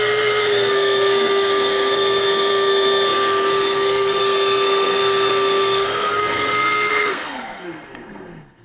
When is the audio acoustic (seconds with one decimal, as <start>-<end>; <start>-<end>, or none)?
none